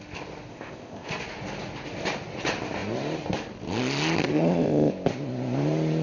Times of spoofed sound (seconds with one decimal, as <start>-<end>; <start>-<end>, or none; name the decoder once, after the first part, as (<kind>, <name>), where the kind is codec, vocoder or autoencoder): 0.5-1.1 (codec, ZipCodec); 4.3-4.9